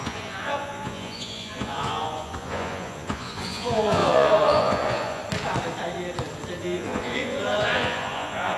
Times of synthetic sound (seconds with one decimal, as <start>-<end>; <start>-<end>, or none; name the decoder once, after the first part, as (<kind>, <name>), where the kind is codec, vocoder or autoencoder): 0.0-5.2 (vocoder, Vocos); 6.6-8.6